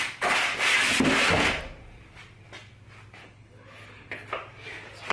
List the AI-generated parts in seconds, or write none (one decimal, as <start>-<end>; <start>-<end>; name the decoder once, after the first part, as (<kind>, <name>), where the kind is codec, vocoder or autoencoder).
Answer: 3.2-4.3 (codec, HILCodec)